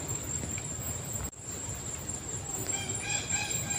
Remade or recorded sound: remade